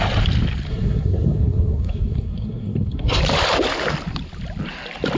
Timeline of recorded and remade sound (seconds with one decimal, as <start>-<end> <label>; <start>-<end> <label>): 0.0-0.7 recorded; 0.7-3.2 remade; 3.2-5.2 recorded